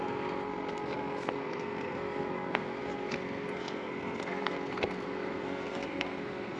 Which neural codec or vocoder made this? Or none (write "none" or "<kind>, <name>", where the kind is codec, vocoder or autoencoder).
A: codec, SNAC